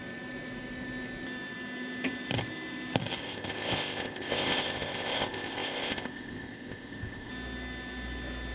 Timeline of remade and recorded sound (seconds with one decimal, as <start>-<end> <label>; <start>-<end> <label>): 0.0-3.2 recorded; 3.2-7.3 remade; 7.3-8.5 recorded